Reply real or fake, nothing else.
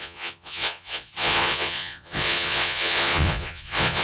fake